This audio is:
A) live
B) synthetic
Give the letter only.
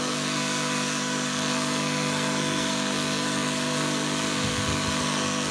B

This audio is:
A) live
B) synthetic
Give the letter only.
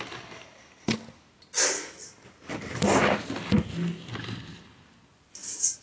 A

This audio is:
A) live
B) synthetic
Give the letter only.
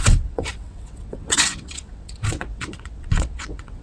B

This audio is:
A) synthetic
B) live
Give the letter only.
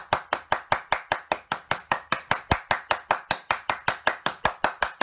B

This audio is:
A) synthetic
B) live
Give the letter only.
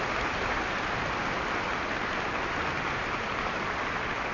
B